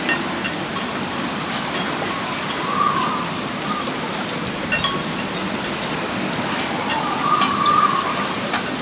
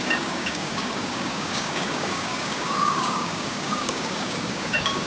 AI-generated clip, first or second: second